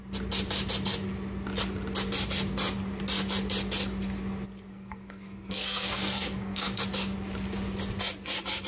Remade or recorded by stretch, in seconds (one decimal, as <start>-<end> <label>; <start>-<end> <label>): 0.0-4.7 recorded; 4.7-6.8 remade; 6.8-8.7 recorded